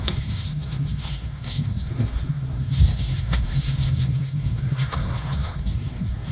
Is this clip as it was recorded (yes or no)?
no